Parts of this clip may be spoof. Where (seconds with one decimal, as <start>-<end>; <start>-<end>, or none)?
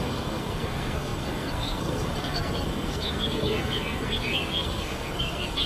0.0-5.7